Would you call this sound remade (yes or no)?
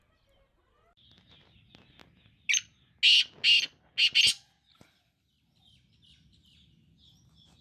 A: no